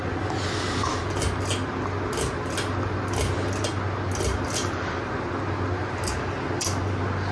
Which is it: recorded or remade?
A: recorded